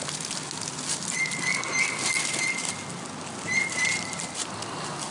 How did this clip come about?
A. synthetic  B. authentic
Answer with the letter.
B